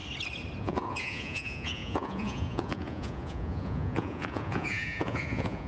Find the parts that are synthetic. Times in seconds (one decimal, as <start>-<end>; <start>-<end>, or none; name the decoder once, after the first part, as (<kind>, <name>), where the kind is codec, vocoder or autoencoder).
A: 0.6-5.7 (vocoder, Vocos)